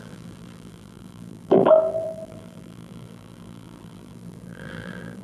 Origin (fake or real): fake